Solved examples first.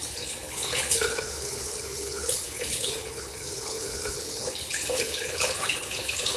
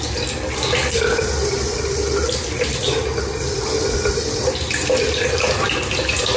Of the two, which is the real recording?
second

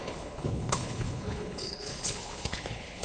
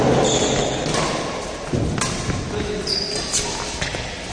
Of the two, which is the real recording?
second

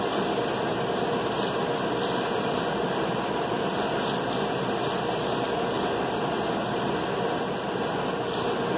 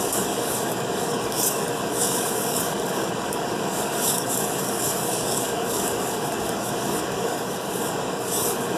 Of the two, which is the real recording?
first